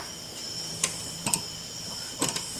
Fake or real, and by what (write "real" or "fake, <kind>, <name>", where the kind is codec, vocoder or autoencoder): fake, vocoder, BigVGAN v2